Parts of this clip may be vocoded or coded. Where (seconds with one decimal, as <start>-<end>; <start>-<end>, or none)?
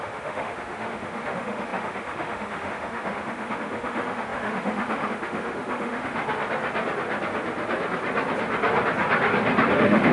0.0-6.2; 9.7-10.1